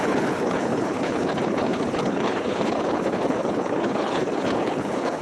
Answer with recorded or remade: remade